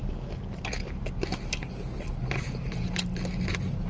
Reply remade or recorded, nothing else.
recorded